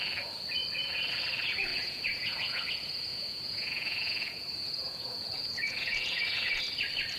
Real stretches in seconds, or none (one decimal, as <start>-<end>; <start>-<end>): 0.0-1.7; 2.6-3.1; 6.6-7.2